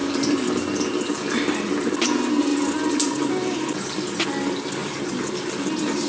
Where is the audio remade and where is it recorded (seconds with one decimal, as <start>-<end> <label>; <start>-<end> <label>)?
0.0-2.5 recorded; 2.5-4.3 remade; 4.3-4.8 recorded; 4.8-5.3 remade; 5.3-6.1 recorded